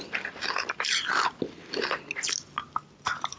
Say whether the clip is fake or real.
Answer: real